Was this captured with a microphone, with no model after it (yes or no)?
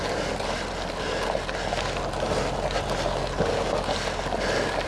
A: yes